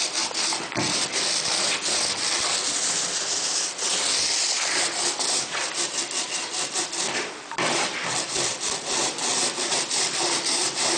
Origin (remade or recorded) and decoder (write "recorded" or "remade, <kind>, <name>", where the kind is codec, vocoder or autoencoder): remade, vocoder, BigVGAN v2